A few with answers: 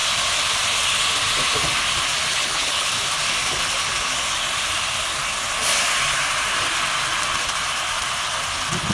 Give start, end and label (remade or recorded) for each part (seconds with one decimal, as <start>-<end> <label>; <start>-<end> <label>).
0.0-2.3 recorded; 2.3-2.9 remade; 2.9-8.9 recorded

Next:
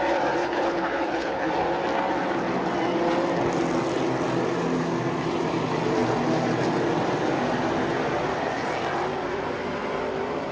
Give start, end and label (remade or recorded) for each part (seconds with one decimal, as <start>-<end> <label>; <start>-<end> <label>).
0.0-0.4 recorded; 0.4-1.5 remade; 1.5-10.5 recorded

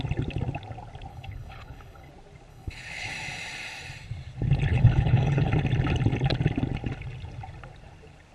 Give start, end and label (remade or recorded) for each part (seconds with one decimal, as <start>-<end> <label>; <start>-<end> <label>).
0.0-1.1 recorded; 1.1-2.1 remade; 2.1-2.5 recorded; 2.5-3.1 remade; 3.1-4.7 recorded; 4.7-5.5 remade; 5.5-8.3 recorded